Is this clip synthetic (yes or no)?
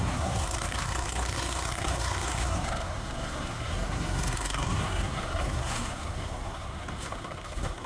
yes